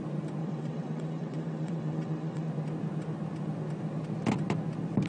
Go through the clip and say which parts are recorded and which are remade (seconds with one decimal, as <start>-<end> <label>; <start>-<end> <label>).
0.0-0.4 recorded; 0.4-2.5 remade; 2.5-5.1 recorded